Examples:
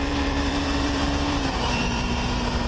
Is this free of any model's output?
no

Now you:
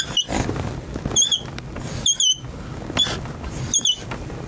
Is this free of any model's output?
yes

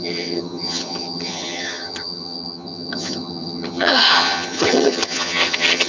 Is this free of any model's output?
no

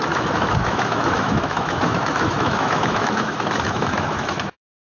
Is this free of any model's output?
no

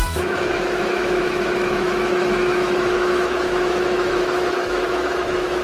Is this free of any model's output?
no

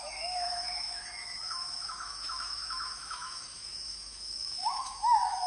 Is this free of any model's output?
no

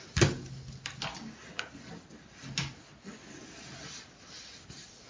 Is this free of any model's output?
yes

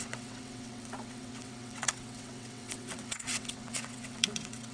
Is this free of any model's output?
no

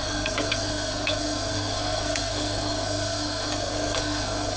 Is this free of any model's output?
no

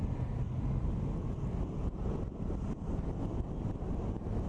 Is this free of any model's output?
yes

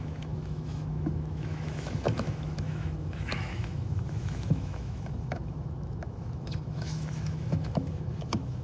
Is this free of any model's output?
no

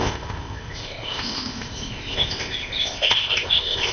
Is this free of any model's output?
no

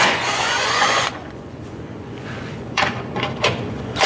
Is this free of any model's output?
no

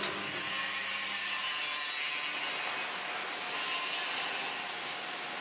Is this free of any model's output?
yes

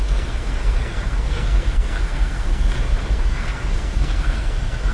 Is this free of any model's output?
no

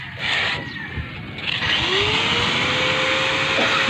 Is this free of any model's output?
yes